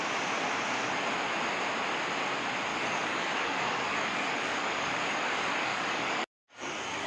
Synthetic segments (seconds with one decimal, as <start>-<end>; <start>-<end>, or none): 2.7-7.1